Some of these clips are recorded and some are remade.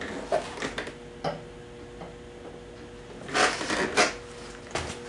recorded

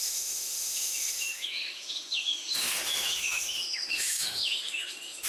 remade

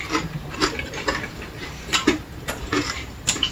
remade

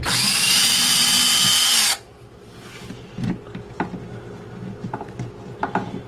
recorded